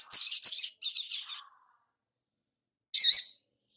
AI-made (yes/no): no